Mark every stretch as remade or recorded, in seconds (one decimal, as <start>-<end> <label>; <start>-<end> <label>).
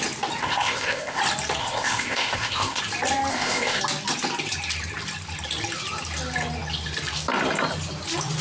0.0-0.4 recorded; 0.4-1.2 remade; 1.2-1.6 recorded; 1.6-2.8 remade; 2.8-3.3 recorded; 3.3-3.8 remade; 3.8-8.4 recorded